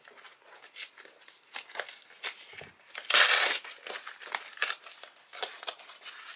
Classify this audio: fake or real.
real